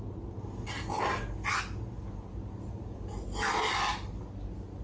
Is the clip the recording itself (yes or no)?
yes